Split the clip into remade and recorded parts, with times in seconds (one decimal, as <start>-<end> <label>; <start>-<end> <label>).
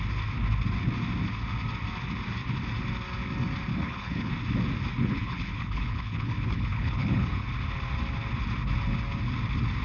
0.0-3.7 recorded; 3.7-4.3 remade; 4.3-5.0 recorded; 5.0-7.5 remade; 7.5-9.8 recorded